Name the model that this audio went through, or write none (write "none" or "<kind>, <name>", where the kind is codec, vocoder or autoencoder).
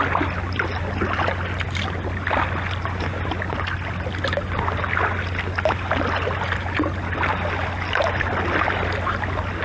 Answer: none